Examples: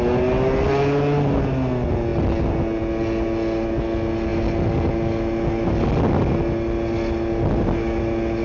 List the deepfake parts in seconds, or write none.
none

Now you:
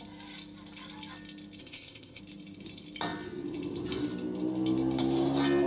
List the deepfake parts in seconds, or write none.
1.6-2.2 (codec, ZipCodec)

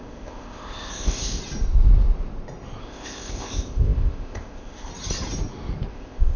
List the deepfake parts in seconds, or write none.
0.0-1.4 (codec, ZipCodec); 2.8-4.9; 5.9-6.4

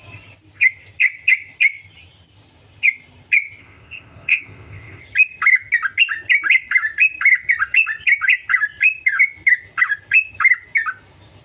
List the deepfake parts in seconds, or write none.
3.6-5.0 (codec, ZipCodec)

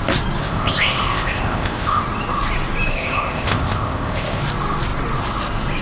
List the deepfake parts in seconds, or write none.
0.4-2.0 (codec, ZipCodec); 2.9-4.4

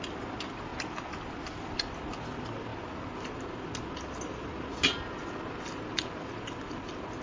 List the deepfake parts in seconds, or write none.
none